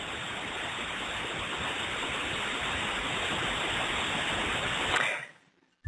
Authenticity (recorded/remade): recorded